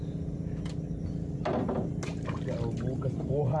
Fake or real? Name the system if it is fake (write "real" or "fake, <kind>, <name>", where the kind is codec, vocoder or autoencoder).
real